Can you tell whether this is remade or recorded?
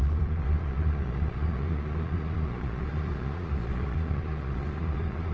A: remade